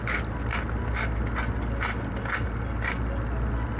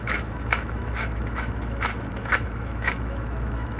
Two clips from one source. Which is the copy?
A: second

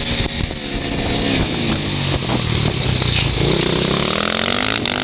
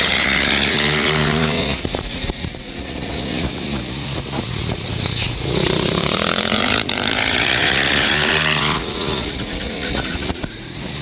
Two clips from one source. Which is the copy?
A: second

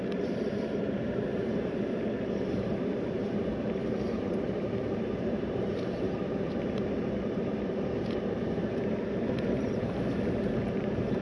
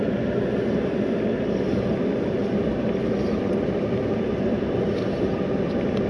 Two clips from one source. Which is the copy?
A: first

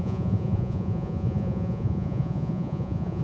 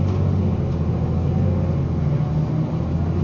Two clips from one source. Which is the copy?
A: first